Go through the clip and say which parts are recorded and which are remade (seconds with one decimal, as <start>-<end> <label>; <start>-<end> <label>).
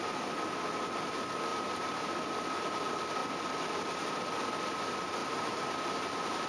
0.0-1.5 recorded; 1.5-2.1 remade; 2.1-5.2 recorded; 5.2-5.7 remade; 5.7-6.5 recorded